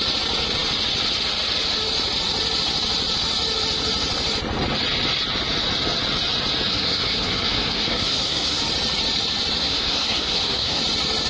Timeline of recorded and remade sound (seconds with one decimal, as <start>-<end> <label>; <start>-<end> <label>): 0.0-6.7 recorded; 6.7-8.6 remade; 8.6-9.6 recorded; 9.6-10.8 remade; 10.8-11.3 recorded